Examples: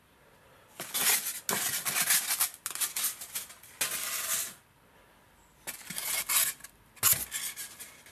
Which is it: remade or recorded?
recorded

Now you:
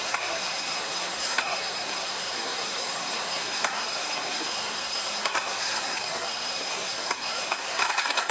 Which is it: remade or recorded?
remade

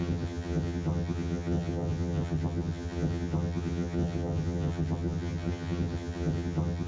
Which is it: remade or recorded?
remade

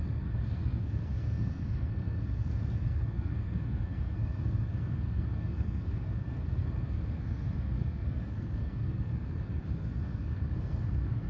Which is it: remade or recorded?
remade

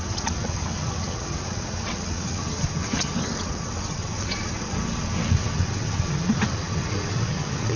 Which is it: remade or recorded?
remade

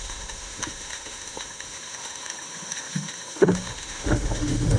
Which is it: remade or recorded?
remade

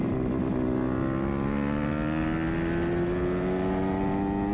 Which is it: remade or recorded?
recorded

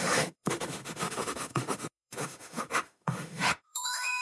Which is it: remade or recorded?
remade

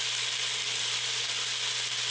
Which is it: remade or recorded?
recorded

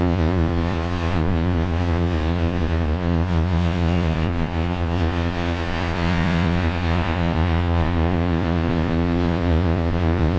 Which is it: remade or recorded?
remade